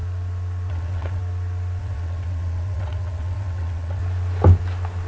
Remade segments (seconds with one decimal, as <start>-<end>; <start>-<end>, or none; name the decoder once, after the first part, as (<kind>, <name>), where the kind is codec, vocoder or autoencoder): 0.7-1.2 (vocoder, WaveNeXt); 1.8-4.0